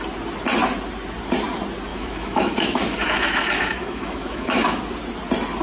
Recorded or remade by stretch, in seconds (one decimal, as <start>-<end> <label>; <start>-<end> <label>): 0.0-1.9 recorded; 1.9-4.8 remade; 4.8-5.6 recorded